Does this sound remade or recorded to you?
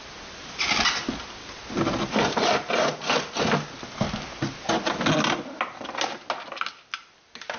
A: recorded